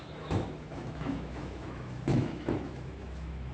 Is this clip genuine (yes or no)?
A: no